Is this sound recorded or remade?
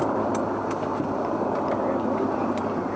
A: recorded